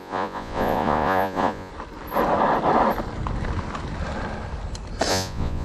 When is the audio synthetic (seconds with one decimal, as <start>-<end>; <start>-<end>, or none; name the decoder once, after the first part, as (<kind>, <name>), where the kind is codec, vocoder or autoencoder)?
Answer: 0.0-1.7 (vocoder, Vocos); 5.1-5.6